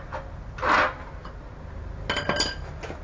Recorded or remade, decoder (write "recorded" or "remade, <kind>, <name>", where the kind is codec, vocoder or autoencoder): recorded